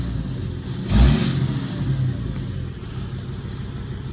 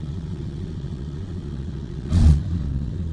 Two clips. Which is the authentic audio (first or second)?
first